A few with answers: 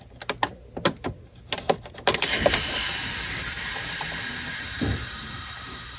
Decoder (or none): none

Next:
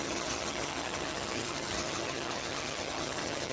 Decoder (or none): vocoder, HiFi-GAN